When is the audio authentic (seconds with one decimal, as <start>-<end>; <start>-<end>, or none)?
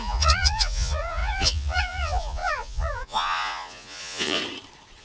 4.4-5.0